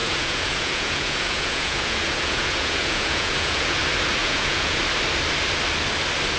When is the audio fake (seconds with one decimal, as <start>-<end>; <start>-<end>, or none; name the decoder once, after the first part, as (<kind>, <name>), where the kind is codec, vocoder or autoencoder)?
0.0-3.8 (vocoder, Vocos); 4.2-4.8